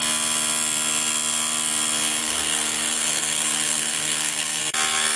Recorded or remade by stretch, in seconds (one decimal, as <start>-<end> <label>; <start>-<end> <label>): 0.0-2.2 recorded; 2.2-4.6 remade; 4.6-5.2 recorded